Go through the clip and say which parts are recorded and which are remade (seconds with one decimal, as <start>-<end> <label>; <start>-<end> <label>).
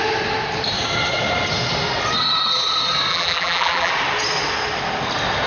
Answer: 0.0-3.1 recorded; 3.1-3.9 remade; 3.9-5.5 recorded